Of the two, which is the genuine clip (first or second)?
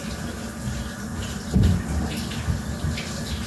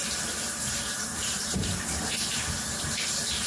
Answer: first